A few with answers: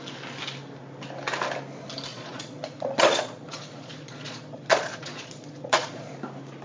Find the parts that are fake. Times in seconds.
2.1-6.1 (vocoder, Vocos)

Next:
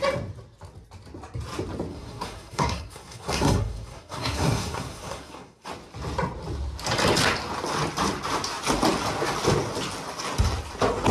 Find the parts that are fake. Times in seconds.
1.9-5.7 (codec, SNAC)

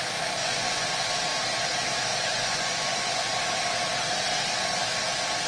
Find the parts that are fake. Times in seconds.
0.4-1.0 (vocoder, Vocos); 2.1-3.3

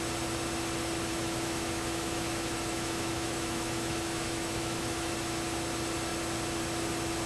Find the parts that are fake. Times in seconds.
1.1-5.1 (autoencoder, DAC-VAE)

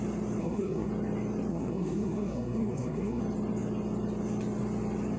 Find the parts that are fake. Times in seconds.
0.4-0.9 (codec, SNAC); 1.5-3.2

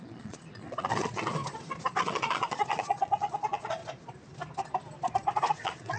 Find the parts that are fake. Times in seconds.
0.0-1.4 (vocoder, Vocos); 2.0-3.8; 5.5-6.0

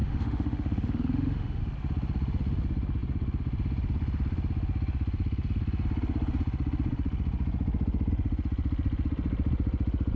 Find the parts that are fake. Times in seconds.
0.0-1.6 (autoencoder, DAC-VAE)